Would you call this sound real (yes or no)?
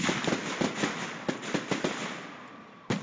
yes